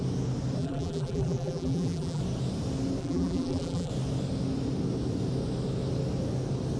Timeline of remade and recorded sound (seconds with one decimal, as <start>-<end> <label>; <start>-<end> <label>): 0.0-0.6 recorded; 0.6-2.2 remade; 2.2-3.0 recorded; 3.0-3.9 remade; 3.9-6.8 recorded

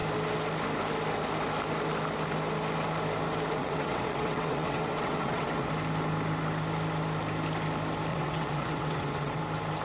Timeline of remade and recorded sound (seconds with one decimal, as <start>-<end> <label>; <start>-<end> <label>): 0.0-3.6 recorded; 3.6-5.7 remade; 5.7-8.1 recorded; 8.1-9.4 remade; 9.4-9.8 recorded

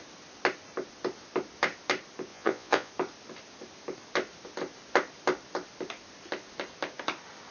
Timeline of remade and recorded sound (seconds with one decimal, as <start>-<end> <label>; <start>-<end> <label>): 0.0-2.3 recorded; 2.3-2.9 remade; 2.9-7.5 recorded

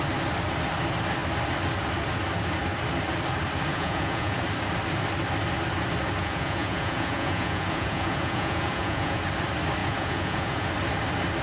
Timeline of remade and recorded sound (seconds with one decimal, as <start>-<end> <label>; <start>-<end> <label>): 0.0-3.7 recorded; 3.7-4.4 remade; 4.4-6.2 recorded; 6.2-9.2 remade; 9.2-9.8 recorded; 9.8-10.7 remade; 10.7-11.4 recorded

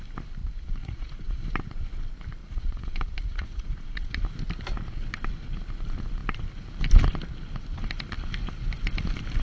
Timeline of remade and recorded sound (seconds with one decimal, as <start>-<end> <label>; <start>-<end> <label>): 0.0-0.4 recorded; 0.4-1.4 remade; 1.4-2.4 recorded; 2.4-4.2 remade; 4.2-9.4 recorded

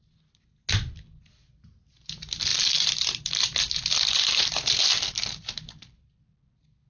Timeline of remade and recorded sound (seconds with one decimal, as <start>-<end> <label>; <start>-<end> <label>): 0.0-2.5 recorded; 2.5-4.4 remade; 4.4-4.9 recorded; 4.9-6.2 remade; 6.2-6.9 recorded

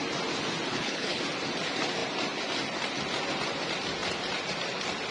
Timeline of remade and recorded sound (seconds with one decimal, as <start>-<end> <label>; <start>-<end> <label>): 0.0-0.7 recorded; 0.7-1.2 remade; 1.2-5.1 recorded

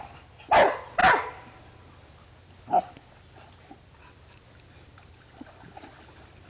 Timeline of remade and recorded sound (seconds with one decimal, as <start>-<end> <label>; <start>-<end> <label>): 0.0-6.5 recorded